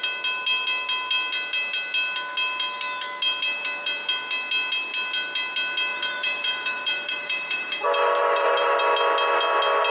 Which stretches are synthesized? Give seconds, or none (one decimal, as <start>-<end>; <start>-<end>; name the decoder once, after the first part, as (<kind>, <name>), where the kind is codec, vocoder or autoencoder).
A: 5.9-8.8 (vocoder, BigVGAN v2)